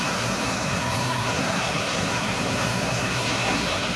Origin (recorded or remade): remade